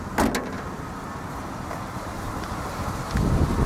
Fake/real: real